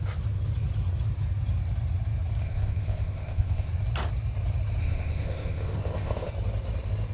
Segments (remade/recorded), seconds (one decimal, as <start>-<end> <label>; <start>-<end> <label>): 0.0-2.4 recorded; 2.4-3.7 remade; 3.7-4.8 recorded; 4.8-6.3 remade; 6.3-7.1 recorded